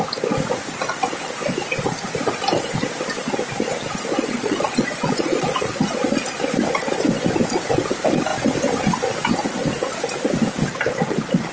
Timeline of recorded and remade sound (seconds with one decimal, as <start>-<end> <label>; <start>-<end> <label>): 0.0-4.2 recorded; 4.2-6.1 remade; 6.1-11.5 recorded